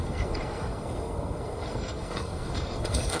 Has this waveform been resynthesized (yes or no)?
yes